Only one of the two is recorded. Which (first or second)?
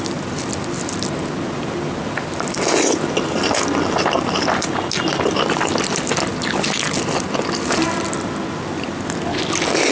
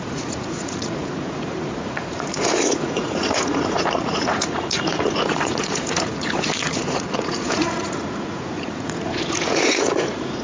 first